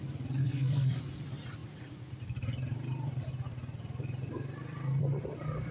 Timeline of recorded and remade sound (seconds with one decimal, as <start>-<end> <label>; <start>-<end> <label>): 0.0-0.4 recorded; 0.4-1.0 remade; 1.0-5.7 recorded